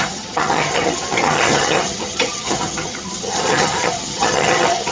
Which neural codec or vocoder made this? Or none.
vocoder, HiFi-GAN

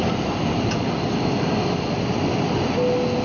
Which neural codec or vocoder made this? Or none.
none